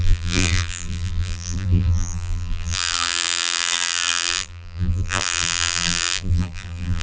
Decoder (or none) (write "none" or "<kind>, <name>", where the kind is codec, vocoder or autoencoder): vocoder, BigVGAN v2